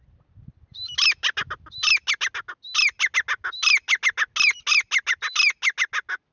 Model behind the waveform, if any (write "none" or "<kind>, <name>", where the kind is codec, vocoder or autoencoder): none